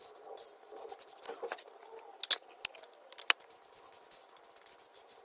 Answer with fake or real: real